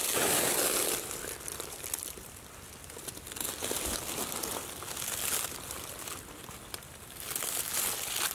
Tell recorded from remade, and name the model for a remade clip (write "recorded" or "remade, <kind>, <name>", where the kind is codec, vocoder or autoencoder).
recorded